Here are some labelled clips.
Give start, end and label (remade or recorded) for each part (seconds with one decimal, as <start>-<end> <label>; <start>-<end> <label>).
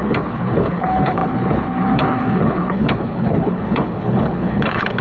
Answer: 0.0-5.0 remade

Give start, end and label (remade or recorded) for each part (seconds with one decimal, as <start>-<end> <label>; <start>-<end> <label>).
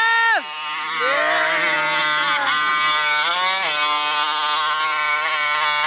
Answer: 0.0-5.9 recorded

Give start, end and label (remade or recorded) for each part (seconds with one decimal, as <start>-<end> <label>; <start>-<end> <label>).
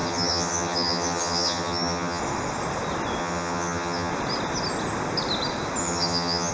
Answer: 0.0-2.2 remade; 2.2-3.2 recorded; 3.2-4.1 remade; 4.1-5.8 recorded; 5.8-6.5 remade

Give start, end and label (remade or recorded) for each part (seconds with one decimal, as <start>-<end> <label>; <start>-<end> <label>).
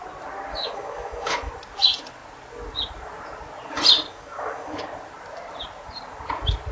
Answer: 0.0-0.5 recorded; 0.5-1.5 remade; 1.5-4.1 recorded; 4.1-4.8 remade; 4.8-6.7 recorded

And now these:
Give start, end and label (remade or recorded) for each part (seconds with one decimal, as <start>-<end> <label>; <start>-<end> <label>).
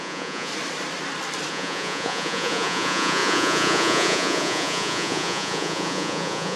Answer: 0.0-0.5 remade; 0.5-1.5 recorded; 1.5-6.6 remade